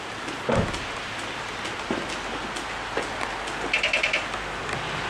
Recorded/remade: recorded